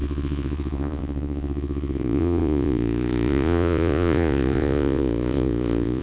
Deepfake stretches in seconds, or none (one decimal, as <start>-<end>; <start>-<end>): 0.0-6.0